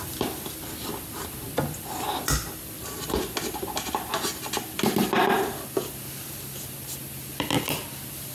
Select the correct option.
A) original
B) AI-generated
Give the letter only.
A